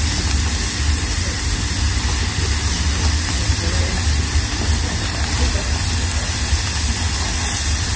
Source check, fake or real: real